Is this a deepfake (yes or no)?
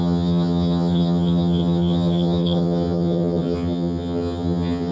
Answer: yes